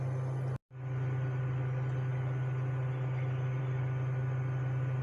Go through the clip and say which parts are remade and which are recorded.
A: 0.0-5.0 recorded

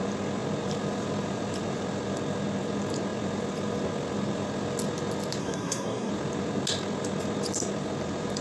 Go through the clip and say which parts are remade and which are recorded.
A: 0.0-5.4 recorded; 5.4-6.1 remade; 6.1-8.4 recorded

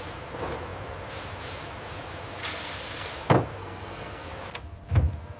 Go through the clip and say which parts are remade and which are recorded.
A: 0.0-2.4 recorded; 2.4-3.1 remade; 3.1-3.6 recorded; 3.6-4.3 remade; 4.3-5.4 recorded

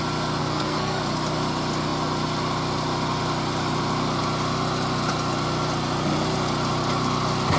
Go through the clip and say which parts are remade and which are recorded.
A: 0.0-0.4 recorded; 0.4-1.0 remade; 1.0-7.6 recorded